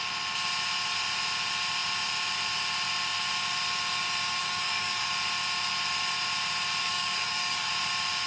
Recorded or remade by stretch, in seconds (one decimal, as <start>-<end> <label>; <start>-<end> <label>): 0.0-4.4 recorded; 4.4-5.1 remade; 5.1-6.8 recorded; 6.8-7.7 remade; 7.7-8.3 recorded